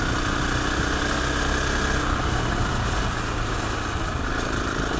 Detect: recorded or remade recorded